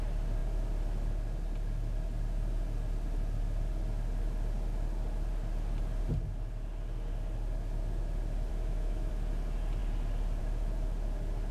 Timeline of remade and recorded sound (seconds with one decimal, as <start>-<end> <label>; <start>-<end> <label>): 0.0-8.5 recorded; 8.5-9.1 remade; 9.1-11.5 recorded